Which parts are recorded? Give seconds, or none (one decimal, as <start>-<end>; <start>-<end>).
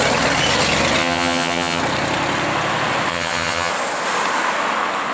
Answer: 0.0-1.0; 1.8-3.1; 3.7-5.1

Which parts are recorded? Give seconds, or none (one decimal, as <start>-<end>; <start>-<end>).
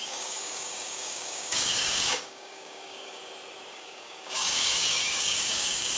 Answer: 3.2-3.7